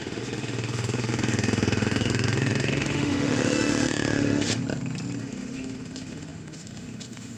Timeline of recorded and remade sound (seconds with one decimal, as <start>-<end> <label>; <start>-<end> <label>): 0.0-4.6 remade; 4.6-5.2 recorded; 5.2-7.4 remade